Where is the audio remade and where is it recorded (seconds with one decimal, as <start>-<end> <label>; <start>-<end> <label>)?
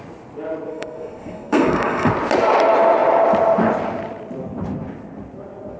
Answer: 0.0-0.7 recorded; 0.7-2.1 remade; 2.1-5.8 recorded